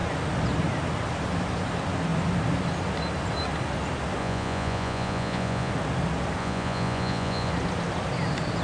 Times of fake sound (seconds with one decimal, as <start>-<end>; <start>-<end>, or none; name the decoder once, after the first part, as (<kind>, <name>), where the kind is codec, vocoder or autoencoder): 4.2-5.7 (vocoder, Vocos); 6.4-7.5

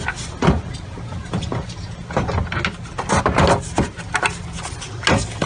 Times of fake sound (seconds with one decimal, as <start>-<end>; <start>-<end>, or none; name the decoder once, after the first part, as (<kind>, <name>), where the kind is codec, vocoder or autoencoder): none

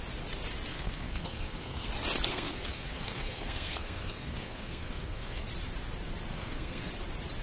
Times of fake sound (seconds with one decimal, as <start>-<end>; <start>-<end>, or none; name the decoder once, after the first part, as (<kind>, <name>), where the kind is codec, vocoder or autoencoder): 0.7-1.9 (codec, SNAC); 2.3-5.4; 6.3-6.9